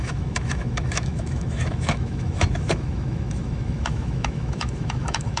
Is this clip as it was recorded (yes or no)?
no